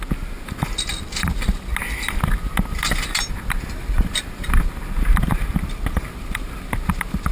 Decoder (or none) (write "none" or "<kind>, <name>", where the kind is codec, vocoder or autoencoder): none